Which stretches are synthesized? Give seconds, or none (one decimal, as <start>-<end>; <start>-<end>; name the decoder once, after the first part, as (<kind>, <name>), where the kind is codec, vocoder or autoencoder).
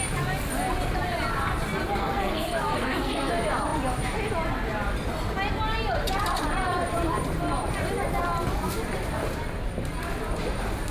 2.0-3.3 (codec, SNAC)